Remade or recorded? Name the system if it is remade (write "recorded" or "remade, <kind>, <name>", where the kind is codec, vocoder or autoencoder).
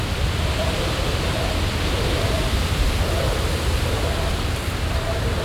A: recorded